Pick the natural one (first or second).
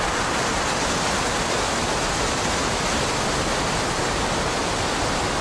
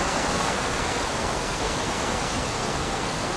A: first